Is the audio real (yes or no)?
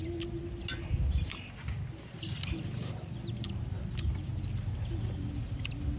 yes